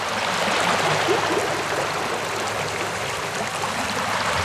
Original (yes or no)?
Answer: yes